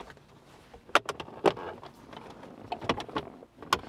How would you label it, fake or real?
real